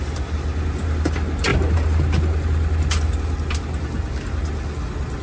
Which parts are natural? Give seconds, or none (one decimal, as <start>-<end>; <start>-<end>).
0.0-5.2

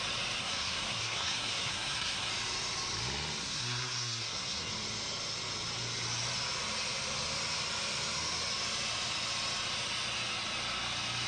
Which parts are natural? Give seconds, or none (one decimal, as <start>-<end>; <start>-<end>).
0.0-0.4; 2.3-3.4; 4.7-11.3

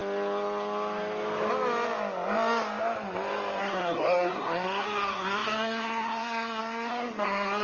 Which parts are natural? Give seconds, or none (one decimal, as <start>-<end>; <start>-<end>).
0.0-3.6

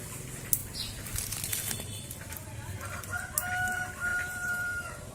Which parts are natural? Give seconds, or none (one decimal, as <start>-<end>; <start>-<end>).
0.0-4.1

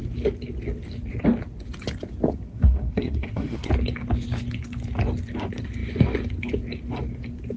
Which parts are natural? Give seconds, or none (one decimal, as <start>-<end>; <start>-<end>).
0.0-2.5; 3.7-7.6

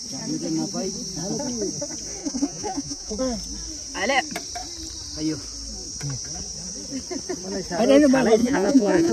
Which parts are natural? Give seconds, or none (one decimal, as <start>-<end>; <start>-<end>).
0.0-2.2; 3.2-8.4

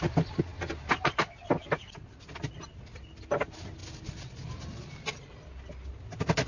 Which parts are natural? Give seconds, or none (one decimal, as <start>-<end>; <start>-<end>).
0.0-6.5